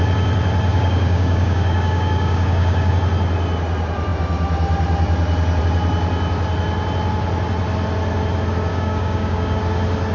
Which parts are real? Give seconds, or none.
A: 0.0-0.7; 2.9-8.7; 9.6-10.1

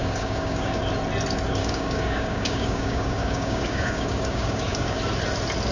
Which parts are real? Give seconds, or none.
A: 0.8-1.6; 5.0-5.7